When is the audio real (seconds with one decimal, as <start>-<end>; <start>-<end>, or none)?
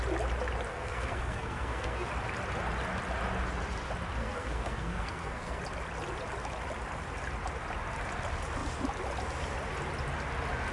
0.0-0.7; 2.1-4.2; 5.6-10.7